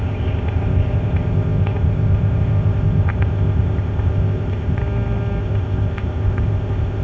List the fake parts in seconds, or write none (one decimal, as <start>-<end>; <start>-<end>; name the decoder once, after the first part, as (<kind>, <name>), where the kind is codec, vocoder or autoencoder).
0.0-4.8 (codec, ZipCodec); 5.4-7.0